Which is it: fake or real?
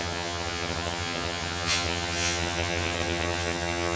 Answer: fake